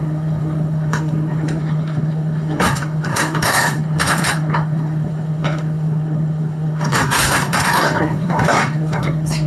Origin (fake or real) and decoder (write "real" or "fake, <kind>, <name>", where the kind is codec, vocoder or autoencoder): fake, codec, SNAC